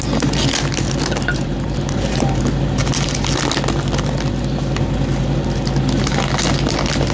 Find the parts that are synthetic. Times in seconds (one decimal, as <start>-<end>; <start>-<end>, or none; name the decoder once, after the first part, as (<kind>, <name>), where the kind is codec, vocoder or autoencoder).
1.3-2.4 (vocoder, BigVGAN v2)